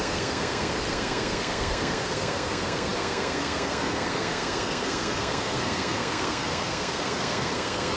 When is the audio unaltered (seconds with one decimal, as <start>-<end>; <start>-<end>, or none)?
none